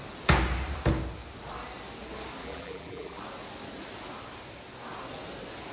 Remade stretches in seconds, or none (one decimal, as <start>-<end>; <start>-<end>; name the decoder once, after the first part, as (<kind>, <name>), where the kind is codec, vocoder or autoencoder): 2.4-3.2 (vocoder, BigVGAN v2)